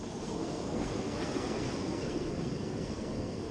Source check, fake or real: fake